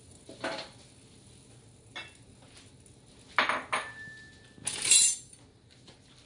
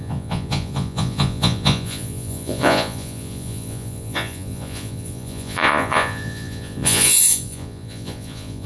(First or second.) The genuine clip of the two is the first